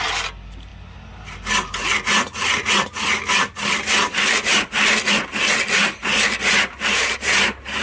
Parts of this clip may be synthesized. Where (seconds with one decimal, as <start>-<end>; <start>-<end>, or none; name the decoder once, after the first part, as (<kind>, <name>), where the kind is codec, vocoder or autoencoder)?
6.0-7.8 (vocoder, BigVGAN v2)